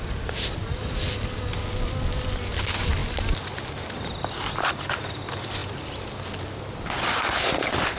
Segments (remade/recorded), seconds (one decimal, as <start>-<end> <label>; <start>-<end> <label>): 0.0-8.0 recorded